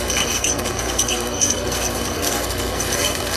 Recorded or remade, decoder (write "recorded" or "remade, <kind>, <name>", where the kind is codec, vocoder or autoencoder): remade, codec, SNAC